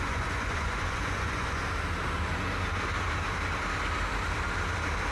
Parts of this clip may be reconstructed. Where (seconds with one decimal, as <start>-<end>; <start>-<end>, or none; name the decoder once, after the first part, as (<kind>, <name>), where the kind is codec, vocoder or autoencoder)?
0.0-1.6 (vocoder, Vocos)